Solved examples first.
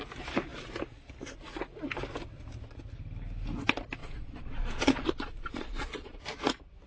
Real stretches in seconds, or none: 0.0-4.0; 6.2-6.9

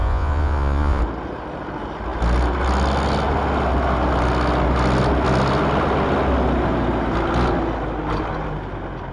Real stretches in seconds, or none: 1.0-9.1

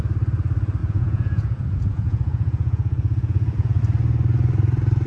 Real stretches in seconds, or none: 0.0-0.8; 3.8-5.1

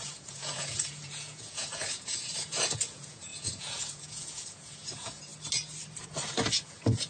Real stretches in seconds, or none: 5.3-6.0